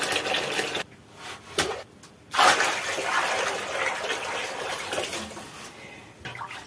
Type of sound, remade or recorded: recorded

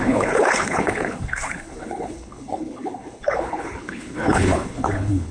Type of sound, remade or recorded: remade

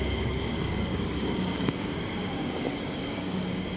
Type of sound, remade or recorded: remade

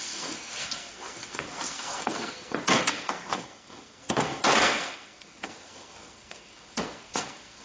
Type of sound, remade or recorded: remade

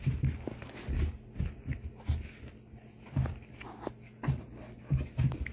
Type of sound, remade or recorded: recorded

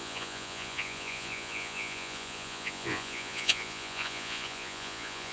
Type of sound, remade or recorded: remade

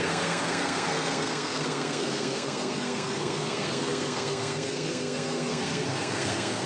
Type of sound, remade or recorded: remade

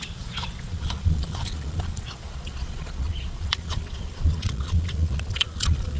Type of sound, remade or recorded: remade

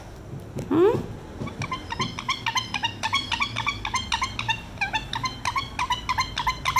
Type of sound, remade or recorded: recorded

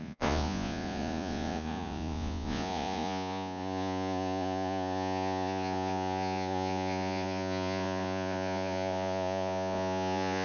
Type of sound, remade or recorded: remade